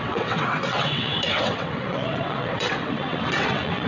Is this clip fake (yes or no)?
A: yes